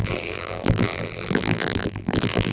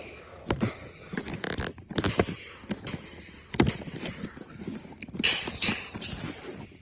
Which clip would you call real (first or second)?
second